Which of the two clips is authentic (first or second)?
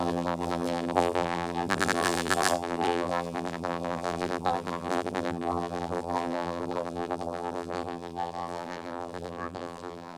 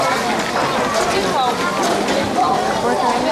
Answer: second